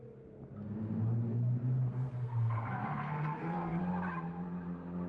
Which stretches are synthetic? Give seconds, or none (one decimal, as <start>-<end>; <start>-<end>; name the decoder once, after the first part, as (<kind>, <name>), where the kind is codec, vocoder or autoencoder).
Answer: 1.8-3.8 (codec, SNAC)